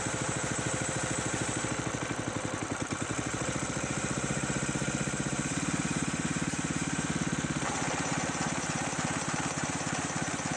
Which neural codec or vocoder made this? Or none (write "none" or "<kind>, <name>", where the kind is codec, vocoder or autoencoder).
vocoder, BigVGAN v2